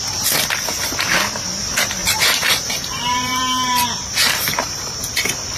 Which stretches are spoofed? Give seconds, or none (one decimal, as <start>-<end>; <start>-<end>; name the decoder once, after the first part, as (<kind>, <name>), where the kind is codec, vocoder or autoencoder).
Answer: 2.0-3.4 (vocoder, BigVGAN v2)